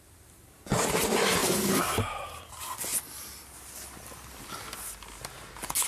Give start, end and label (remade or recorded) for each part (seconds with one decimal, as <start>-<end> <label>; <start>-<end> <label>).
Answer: 0.0-1.4 recorded; 1.4-2.5 remade; 2.5-5.9 recorded